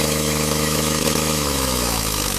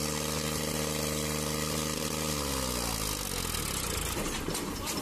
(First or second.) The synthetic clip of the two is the first